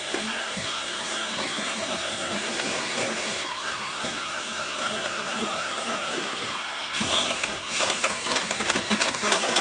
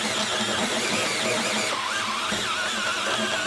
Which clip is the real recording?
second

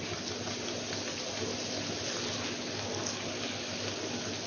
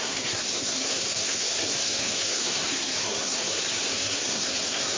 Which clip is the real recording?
first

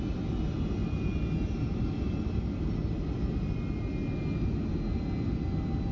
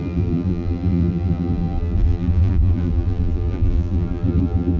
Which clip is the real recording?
first